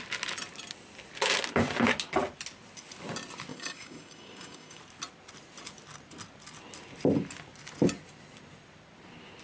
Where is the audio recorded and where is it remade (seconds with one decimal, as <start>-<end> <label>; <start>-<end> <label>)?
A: 0.0-3.5 recorded; 3.5-4.8 remade; 4.8-9.4 recorded